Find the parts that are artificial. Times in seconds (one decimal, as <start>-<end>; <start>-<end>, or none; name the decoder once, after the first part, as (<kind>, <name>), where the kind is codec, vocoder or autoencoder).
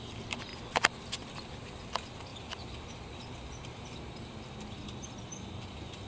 none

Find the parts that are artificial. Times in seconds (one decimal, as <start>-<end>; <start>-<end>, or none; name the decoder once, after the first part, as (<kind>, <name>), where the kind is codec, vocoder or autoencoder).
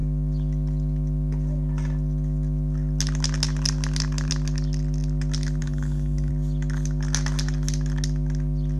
5.6-6.3 (codec, DAC)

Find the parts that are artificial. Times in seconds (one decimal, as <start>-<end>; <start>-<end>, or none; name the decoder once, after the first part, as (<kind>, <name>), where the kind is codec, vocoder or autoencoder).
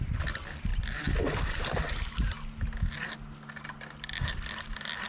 none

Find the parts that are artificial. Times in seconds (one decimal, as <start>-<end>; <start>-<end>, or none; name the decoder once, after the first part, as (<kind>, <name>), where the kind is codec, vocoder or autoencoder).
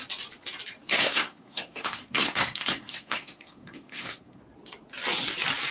1.0-4.4 (codec, SNAC)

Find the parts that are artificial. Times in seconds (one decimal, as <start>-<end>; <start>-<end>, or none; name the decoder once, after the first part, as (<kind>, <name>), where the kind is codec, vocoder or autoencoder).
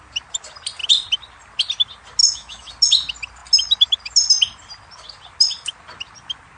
2.2-2.7 (autoencoder, DAC-VAE)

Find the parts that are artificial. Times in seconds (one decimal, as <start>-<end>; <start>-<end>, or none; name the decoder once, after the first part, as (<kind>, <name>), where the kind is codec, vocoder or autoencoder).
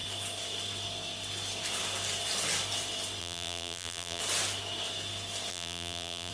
3.2-4.2 (vocoder, BigVGAN v2); 5.5-6.3